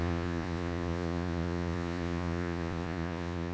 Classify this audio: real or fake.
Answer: fake